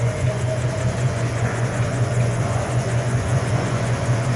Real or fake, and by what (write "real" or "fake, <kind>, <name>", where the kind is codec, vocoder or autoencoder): fake, vocoder, Vocos